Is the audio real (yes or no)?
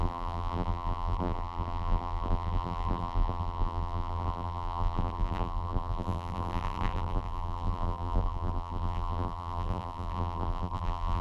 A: no